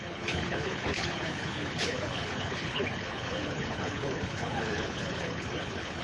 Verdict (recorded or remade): remade